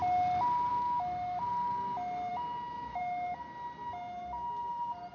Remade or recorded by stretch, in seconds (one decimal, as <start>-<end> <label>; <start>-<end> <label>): 0.0-0.7 recorded; 0.7-1.4 remade; 1.4-2.3 recorded; 2.3-3.0 remade; 3.0-5.1 recorded